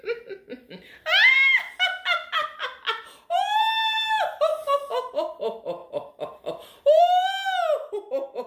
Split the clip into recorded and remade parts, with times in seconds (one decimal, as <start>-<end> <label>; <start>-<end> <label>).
0.0-8.5 recorded